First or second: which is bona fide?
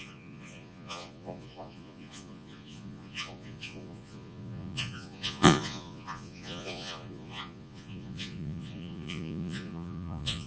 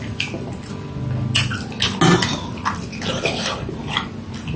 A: second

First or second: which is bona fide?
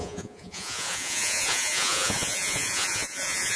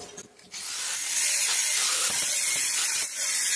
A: second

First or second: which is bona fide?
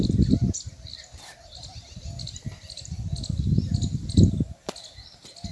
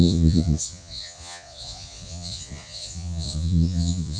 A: first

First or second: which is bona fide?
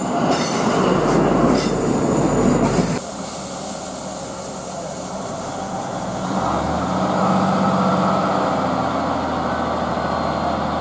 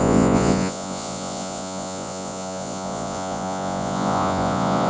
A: first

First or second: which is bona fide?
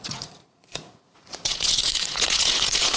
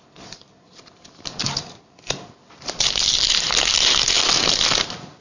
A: second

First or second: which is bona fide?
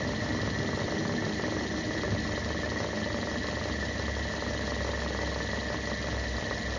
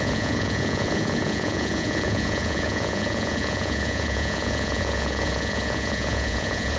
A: first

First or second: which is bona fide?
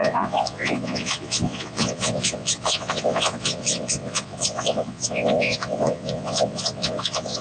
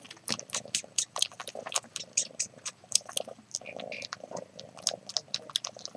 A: second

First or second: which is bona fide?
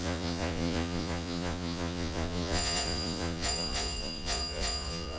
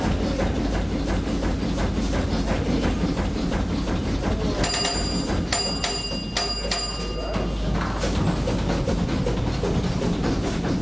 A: second